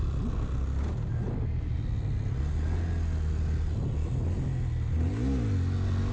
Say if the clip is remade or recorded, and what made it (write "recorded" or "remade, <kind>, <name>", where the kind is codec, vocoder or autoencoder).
recorded